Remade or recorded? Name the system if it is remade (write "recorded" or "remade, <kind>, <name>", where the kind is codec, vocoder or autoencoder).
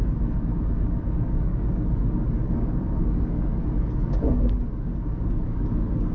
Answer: remade, codec, DAC